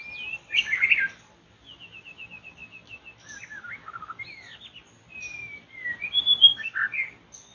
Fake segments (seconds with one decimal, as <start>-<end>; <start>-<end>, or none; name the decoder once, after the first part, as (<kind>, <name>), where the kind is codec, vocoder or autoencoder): 6.5-7.1 (codec, DAC)